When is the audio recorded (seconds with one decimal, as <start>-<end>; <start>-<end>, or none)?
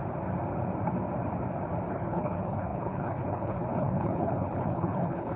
0.0-1.9